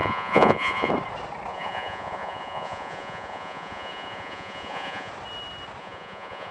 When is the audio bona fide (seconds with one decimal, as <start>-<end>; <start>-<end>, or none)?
0.9-1.5; 5.1-5.8